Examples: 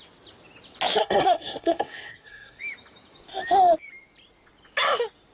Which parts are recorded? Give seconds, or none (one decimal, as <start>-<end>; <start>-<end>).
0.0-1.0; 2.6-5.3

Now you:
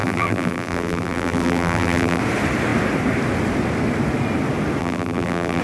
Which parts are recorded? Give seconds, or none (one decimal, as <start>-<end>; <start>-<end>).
2.2-4.8

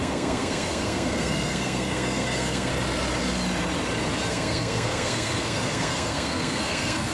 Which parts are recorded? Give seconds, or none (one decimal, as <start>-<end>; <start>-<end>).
2.7-4.3

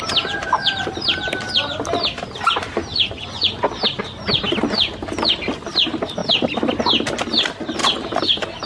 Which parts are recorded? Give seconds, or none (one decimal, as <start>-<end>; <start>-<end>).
0.0-2.9; 3.5-8.7

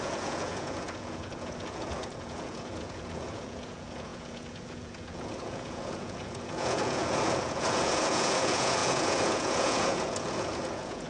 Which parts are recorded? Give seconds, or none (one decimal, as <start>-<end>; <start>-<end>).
none

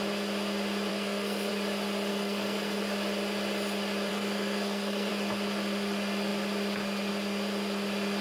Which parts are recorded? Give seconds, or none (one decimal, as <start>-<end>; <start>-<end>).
0.0-0.9; 1.5-2.1; 2.8-4.1; 5.1-8.2